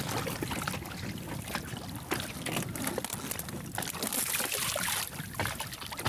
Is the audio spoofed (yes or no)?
no